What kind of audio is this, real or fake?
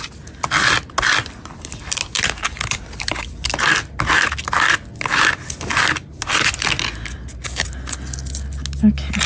real